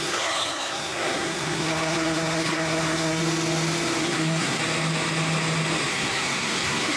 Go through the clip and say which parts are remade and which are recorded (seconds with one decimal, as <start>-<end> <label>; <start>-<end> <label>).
0.0-3.2 remade; 3.2-4.0 recorded; 4.0-4.6 remade; 4.6-5.9 recorded; 5.9-7.0 remade

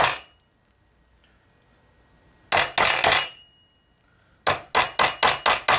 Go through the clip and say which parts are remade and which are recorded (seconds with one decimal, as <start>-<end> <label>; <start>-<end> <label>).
0.0-5.8 recorded

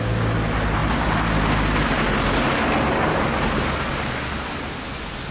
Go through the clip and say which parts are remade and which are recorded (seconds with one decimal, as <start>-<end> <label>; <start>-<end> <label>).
0.0-5.3 recorded

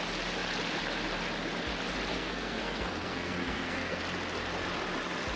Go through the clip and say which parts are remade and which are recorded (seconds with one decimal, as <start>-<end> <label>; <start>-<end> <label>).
0.0-2.1 recorded; 2.1-4.0 remade; 4.0-5.4 recorded